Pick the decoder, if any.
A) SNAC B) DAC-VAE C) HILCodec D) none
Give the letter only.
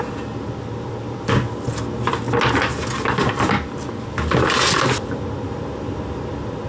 D